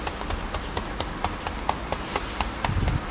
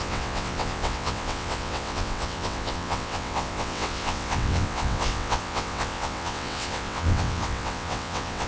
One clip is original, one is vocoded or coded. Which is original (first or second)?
first